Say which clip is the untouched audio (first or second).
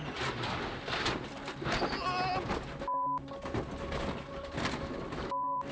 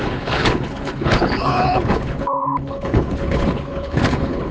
first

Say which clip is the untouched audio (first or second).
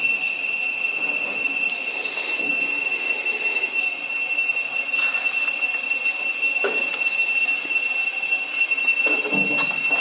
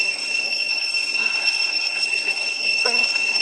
first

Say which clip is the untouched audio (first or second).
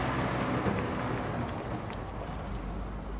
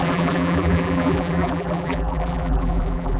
first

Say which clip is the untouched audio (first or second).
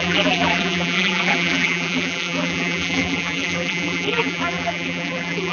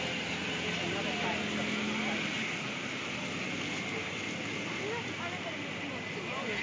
second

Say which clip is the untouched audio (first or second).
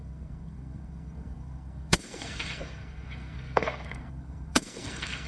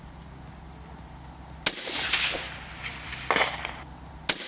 second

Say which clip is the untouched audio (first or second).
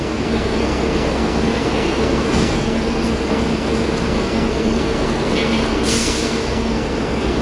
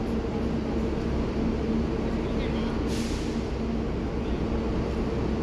second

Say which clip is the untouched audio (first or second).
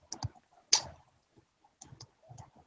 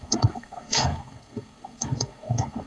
first